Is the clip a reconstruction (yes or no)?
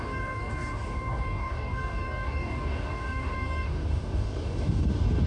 yes